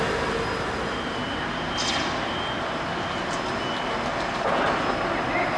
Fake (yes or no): no